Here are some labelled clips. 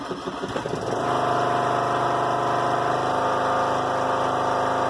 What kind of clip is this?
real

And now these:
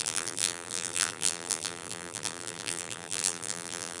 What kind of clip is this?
fake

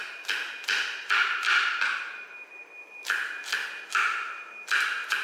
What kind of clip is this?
real